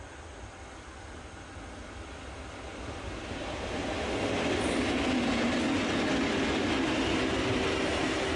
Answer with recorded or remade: recorded